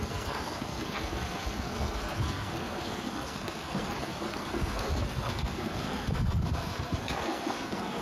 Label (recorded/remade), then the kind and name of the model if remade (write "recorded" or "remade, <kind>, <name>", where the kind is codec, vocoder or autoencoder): remade, codec, SNAC